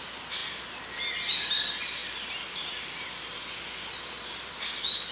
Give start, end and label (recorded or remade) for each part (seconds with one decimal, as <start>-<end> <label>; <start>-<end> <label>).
0.0-5.1 recorded